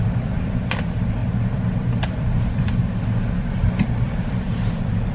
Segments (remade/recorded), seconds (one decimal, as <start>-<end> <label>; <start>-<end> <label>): 0.0-1.2 remade; 1.2-2.0 recorded; 2.0-2.8 remade; 2.8-3.8 recorded; 3.8-5.1 remade